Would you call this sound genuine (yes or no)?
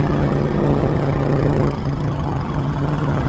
no